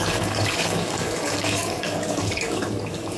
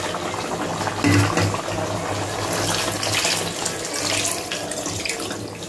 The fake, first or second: first